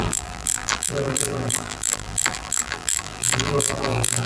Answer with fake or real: fake